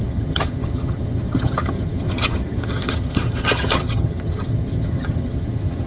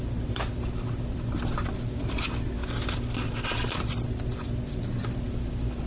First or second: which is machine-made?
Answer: first